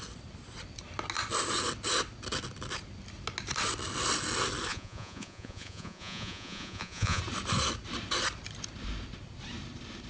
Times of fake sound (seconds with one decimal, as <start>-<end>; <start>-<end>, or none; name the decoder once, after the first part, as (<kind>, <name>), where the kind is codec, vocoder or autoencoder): 4.7-7.2 (vocoder, Vocos)